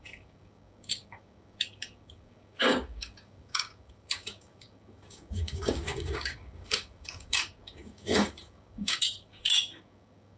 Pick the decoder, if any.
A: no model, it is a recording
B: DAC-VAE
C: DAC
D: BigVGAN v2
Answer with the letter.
C